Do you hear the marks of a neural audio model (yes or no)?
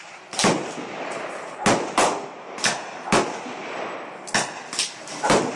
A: no